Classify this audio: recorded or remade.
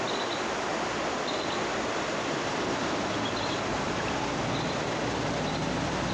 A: recorded